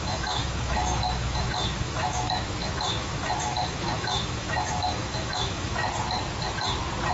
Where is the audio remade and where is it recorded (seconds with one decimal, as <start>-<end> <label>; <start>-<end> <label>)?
0.0-5.8 remade; 5.8-7.1 recorded